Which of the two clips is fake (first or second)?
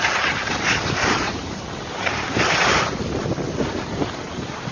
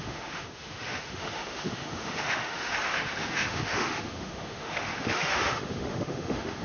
second